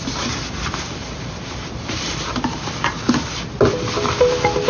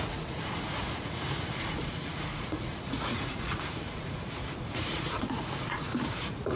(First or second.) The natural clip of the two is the first